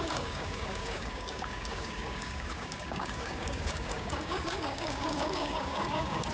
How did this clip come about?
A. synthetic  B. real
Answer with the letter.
A